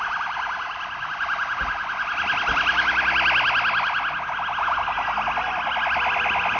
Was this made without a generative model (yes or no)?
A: yes